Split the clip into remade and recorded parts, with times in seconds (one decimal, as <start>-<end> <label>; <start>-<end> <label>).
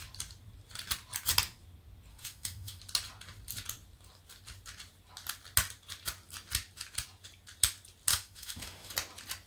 0.0-2.1 recorded; 2.1-2.8 remade; 2.8-8.1 recorded; 8.1-8.9 remade; 8.9-9.5 recorded